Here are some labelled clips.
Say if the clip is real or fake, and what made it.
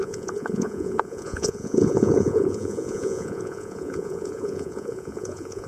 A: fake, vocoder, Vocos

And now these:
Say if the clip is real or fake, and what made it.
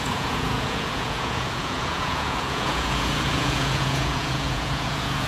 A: fake, vocoder, Vocos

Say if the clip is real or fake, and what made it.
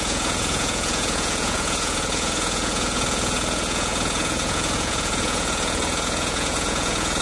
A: fake, vocoder, Vocos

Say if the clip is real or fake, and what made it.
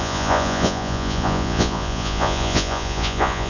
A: fake, vocoder, Vocos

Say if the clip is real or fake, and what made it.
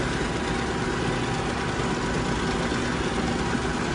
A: real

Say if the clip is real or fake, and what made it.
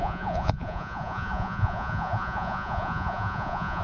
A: fake, vocoder, Vocos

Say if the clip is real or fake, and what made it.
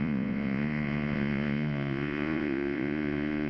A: fake, vocoder, Vocos